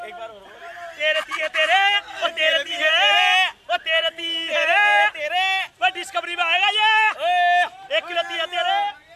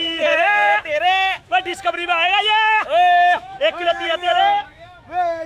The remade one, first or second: second